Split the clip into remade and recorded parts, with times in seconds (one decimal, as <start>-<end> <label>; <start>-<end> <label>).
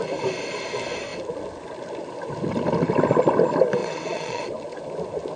0.0-3.8 recorded; 3.8-4.4 remade; 4.4-5.4 recorded